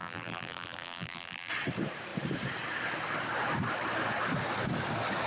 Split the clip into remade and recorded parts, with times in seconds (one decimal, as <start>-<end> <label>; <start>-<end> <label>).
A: 0.0-1.5 remade; 1.5-5.3 recorded